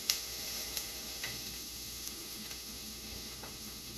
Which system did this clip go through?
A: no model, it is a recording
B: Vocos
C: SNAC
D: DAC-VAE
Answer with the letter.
D